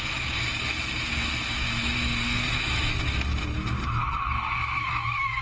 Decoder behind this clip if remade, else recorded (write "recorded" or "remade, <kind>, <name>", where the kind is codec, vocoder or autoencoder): remade, autoencoder, DAC-VAE